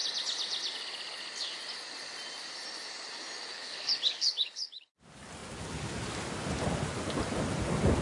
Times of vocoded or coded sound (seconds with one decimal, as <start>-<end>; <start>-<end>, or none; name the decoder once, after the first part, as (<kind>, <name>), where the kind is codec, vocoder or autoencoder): 3.5-4.9 (codec, HILCodec)